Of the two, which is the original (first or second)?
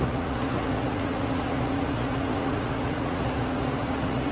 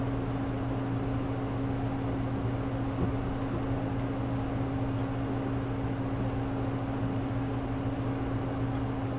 second